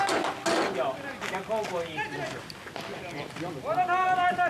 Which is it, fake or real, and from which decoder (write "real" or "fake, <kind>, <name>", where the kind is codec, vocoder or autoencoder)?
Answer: real